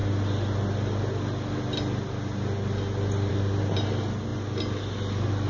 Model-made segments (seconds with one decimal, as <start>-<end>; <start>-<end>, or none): none